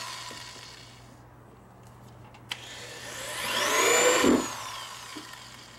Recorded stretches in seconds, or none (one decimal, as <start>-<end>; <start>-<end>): 0.0-5.8